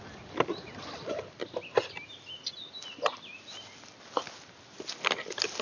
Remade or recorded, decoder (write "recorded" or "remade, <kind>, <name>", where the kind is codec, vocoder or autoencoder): recorded